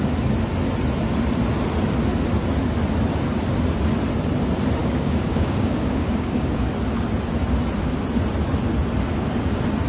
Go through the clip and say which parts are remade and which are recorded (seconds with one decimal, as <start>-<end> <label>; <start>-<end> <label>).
0.0-4.8 recorded; 4.8-6.7 remade; 6.7-9.9 recorded